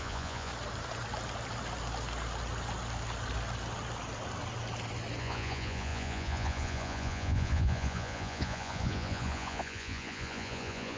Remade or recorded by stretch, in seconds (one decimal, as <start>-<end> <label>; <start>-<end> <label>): 0.0-0.5 remade; 0.5-5.2 recorded; 5.2-11.0 remade